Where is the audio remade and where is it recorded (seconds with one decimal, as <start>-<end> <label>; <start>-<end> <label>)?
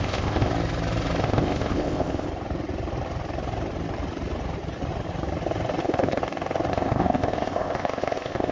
0.0-0.5 remade; 0.5-1.2 recorded; 1.2-2.3 remade; 2.3-5.8 recorded; 5.8-6.2 remade; 6.2-6.7 recorded; 6.7-8.5 remade